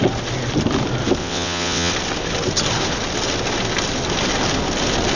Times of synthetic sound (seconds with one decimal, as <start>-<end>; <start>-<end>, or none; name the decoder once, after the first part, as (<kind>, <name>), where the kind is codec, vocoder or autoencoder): 1.2-1.9 (vocoder, WaveNeXt)